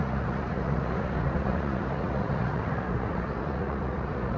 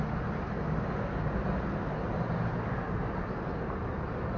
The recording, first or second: second